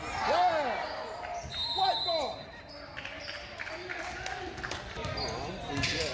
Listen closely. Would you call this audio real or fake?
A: real